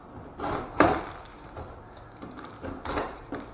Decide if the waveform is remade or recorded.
remade